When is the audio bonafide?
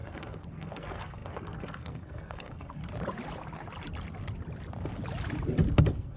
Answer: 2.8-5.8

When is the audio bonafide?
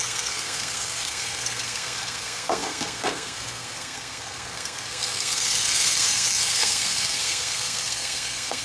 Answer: none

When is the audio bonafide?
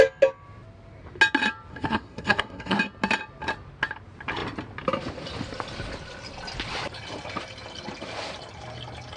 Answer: 0.0-1.7; 2.8-9.2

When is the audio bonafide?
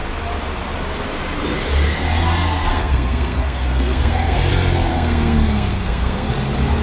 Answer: 0.0-2.7; 4.5-4.9; 6.3-6.8